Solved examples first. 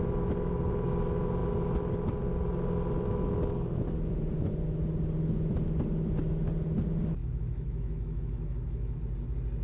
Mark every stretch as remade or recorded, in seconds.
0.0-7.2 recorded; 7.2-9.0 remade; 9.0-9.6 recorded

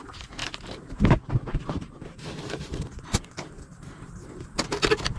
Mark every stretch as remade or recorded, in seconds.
0.0-1.5 recorded; 1.5-4.6 remade; 4.6-5.2 recorded

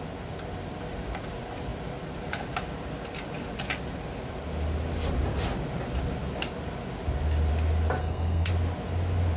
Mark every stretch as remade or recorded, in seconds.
0.0-8.0 recorded; 8.0-8.5 remade; 8.5-9.4 recorded

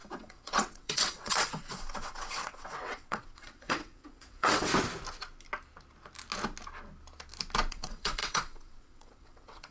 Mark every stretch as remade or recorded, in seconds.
0.0-4.7 remade; 4.7-7.7 recorded; 7.7-9.7 remade